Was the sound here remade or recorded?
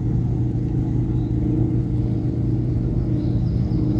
recorded